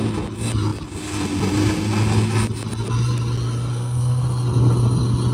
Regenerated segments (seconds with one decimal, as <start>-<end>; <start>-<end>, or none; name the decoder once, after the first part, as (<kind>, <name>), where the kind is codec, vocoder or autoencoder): 3.7-4.2 (codec, SNAC)

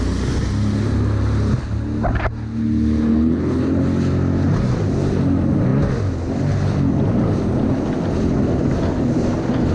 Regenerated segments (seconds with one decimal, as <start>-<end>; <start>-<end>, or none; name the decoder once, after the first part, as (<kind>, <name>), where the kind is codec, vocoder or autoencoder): 3.1-3.6 (codec, HILCodec)

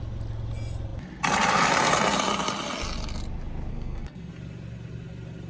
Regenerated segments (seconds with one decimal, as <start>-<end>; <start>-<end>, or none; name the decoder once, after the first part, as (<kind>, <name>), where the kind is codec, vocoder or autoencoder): 3.7-4.3 (codec, SNAC)

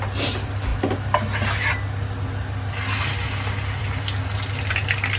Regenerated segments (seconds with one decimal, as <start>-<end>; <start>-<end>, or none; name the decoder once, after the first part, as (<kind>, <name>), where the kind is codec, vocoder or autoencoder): none

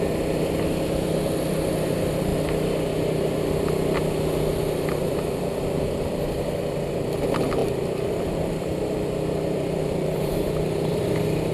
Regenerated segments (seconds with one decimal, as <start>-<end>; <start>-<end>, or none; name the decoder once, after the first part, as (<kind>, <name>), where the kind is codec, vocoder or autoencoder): 7.6-11.0 (vocoder, BigVGAN v2)

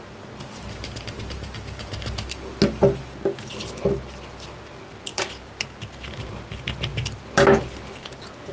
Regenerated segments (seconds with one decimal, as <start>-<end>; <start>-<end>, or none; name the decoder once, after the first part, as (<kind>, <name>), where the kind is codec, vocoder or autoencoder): none

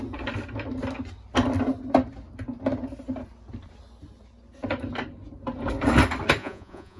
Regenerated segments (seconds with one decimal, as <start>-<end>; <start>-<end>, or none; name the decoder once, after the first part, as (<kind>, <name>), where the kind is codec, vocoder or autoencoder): 6.4-7.0 (vocoder, Vocos)

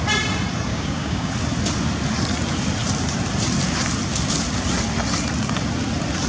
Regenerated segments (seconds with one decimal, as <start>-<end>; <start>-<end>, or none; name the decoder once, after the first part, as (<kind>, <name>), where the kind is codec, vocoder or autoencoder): 0.7-1.3 (codec, DAC)